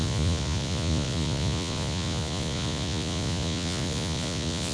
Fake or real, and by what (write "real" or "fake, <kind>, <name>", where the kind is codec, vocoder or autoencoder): fake, vocoder, Vocos